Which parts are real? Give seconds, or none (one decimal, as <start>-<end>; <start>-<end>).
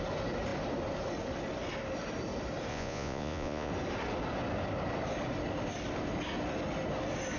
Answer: 0.0-2.7; 3.7-7.4